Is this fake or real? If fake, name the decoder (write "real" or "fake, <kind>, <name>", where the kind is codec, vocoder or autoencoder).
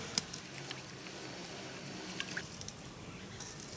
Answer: real